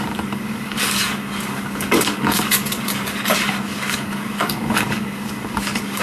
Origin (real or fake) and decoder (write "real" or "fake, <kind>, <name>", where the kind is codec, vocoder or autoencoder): fake, codec, DAC